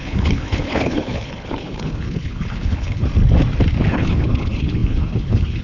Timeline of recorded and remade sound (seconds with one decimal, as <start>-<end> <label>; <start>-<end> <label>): 0.0-3.1 remade; 3.1-3.9 recorded; 3.9-5.6 remade